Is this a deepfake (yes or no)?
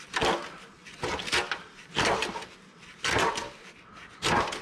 no